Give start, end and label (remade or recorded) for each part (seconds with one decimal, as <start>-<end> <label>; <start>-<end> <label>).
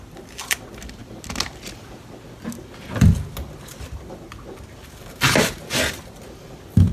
0.0-6.9 recorded